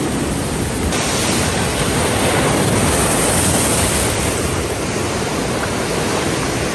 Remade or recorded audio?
recorded